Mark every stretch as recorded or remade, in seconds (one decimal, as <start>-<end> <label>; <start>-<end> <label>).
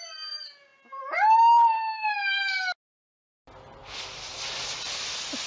0.0-5.5 recorded